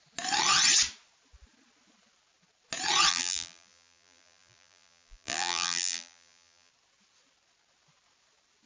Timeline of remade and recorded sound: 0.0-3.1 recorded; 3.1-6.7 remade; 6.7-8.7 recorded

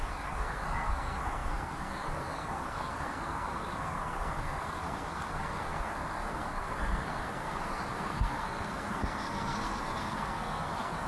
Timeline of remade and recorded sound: 0.0-11.1 remade

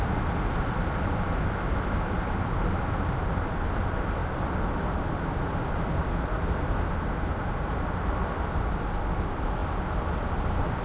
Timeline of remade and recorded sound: 0.0-10.8 recorded

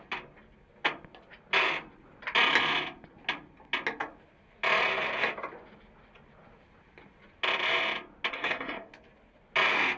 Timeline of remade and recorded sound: 0.0-8.3 recorded; 8.3-8.9 remade; 8.9-10.0 recorded